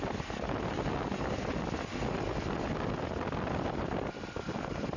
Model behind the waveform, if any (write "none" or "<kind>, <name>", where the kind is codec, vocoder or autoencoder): none